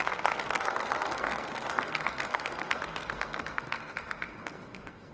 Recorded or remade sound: remade